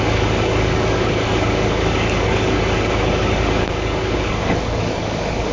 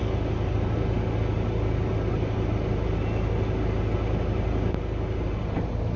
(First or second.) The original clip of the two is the second